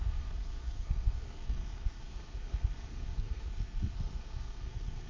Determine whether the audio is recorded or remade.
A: remade